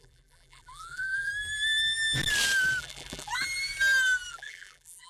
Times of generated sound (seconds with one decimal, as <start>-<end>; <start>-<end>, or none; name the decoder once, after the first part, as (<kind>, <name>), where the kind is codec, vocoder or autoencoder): 0.0-1.3 (vocoder, BigVGAN v2); 2.8-3.3; 4.3-5.1